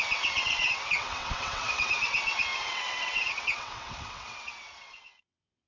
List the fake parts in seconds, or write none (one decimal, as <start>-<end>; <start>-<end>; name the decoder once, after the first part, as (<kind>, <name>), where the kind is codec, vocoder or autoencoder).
0.0-5.7 (vocoder, WaveNeXt)